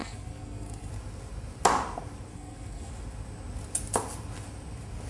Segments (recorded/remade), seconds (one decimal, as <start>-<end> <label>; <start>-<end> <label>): 0.0-0.9 remade; 0.9-2.3 recorded; 2.3-2.9 remade; 2.9-5.1 recorded